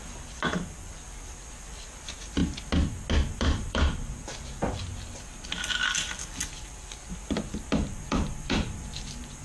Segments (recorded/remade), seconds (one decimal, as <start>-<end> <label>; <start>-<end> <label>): 0.0-2.4 remade; 2.4-3.3 recorded; 3.3-4.9 remade; 4.9-5.7 recorded; 5.7-9.4 remade